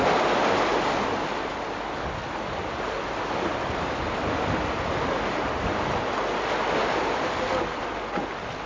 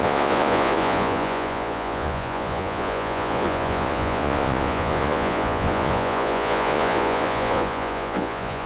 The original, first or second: first